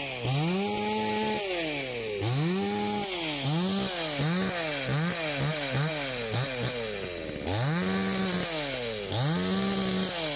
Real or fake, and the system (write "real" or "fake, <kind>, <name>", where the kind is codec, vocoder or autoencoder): real